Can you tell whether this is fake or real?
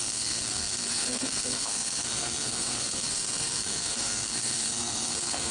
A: fake